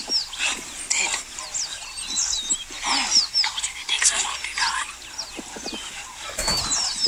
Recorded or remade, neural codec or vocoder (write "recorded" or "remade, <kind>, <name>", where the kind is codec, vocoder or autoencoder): recorded